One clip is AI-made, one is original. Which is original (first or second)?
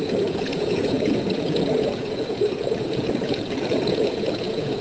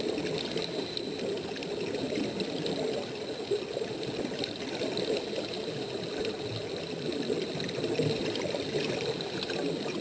second